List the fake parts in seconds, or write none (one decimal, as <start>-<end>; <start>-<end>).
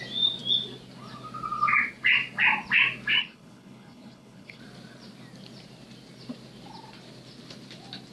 3.2-4.6